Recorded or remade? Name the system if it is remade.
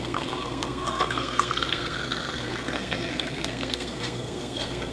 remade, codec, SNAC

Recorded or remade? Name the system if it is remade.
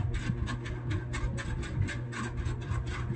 recorded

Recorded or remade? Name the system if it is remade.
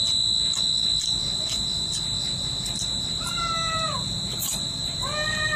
recorded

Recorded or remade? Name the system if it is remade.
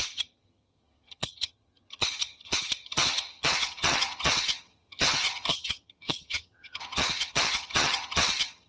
remade, vocoder, HiFi-GAN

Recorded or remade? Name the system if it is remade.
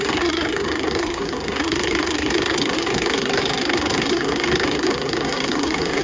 remade, codec, SNAC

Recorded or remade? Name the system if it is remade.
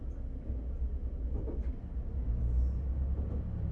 recorded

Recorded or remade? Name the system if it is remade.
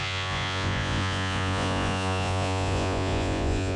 remade, vocoder, Vocos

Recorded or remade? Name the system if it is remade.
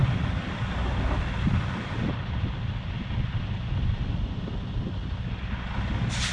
recorded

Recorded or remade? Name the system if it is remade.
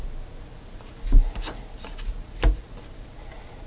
recorded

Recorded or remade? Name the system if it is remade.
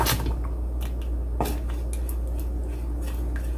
recorded